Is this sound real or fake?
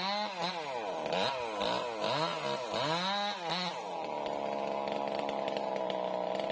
real